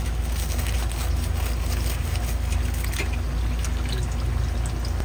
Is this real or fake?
real